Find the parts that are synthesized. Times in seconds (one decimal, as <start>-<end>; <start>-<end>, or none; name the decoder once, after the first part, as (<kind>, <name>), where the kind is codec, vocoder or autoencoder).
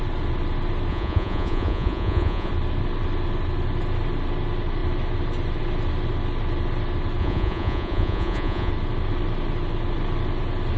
0.9-2.5 (vocoder, Vocos); 7.2-8.7